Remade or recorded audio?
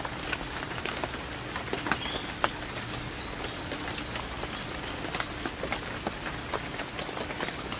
recorded